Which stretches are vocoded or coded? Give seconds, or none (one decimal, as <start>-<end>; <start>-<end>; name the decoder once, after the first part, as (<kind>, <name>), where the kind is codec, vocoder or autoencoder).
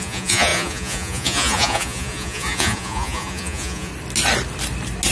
0.0-3.9 (vocoder, Vocos)